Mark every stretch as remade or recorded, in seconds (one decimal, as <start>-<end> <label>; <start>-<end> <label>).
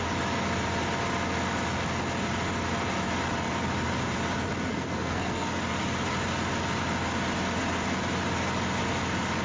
0.0-4.7 recorded; 4.7-5.6 remade; 5.6-9.4 recorded